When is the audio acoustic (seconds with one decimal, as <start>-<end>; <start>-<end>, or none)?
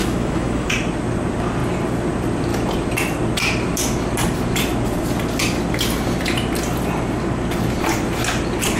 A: 0.7-8.8